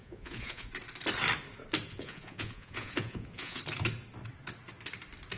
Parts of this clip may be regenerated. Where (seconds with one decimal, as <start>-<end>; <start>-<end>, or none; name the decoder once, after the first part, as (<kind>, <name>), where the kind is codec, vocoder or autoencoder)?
0.0-0.7 (vocoder, Vocos); 1.9-3.6